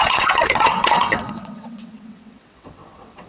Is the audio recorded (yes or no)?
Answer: no